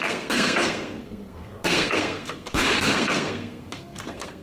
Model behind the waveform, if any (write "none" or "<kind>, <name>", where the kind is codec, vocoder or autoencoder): codec, SNAC